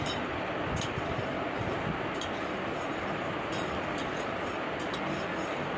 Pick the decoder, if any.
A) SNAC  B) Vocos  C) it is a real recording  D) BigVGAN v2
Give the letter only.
C